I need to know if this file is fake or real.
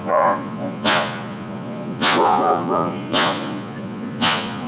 fake